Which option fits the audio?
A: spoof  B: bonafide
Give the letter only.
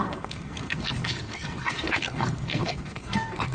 A